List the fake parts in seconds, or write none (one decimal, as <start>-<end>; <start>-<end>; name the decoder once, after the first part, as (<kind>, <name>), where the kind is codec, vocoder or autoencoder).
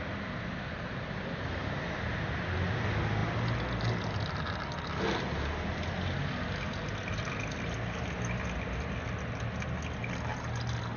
none